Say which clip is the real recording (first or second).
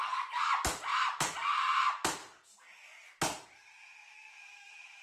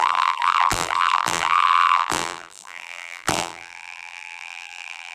first